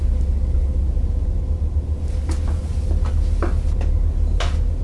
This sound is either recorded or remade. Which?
recorded